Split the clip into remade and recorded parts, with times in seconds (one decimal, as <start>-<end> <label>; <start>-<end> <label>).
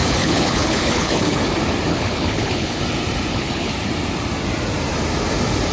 0.0-1.4 remade; 1.4-1.9 recorded; 1.9-2.8 remade; 2.8-3.3 recorded; 3.3-3.8 remade; 3.8-5.7 recorded